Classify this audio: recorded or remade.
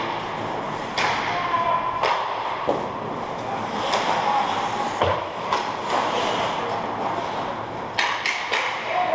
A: recorded